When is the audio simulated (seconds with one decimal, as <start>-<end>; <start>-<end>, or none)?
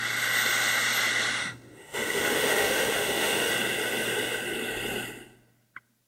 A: 1.4-3.5